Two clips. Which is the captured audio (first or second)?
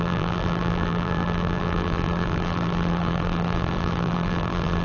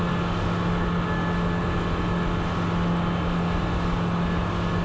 second